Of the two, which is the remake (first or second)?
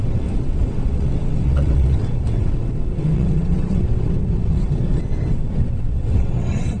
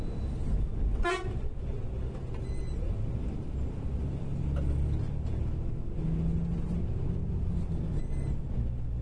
first